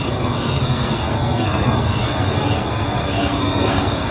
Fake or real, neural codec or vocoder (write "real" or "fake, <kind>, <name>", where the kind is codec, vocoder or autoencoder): fake, codec, SNAC